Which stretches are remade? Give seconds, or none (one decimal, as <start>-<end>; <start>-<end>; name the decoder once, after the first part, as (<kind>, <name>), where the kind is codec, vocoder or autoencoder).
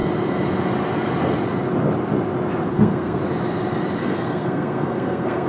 2.7-3.2 (codec, SNAC); 4.0-5.5